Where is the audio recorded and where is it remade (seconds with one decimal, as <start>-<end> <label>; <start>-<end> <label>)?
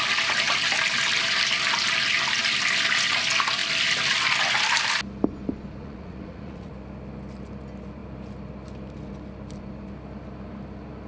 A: 0.0-5.8 recorded; 5.8-6.7 remade; 6.7-11.1 recorded